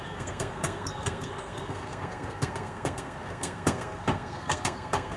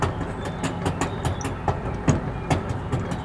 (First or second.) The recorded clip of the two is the second